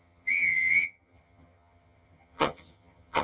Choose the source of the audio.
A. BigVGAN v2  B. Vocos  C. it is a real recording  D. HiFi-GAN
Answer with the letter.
D